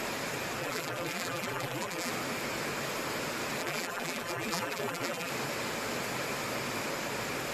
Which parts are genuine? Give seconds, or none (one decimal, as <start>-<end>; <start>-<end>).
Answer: 0.0-0.6; 2.1-3.6; 5.3-7.5